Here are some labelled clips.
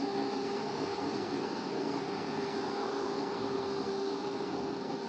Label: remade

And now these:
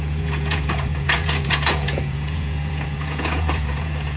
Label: remade